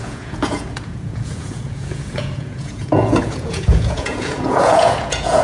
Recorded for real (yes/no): no